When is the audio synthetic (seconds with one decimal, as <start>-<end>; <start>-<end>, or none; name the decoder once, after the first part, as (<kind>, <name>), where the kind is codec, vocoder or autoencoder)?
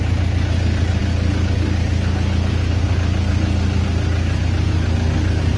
none